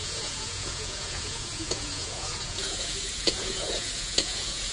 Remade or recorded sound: remade